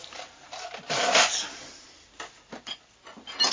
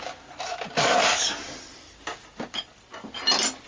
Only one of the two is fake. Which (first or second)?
first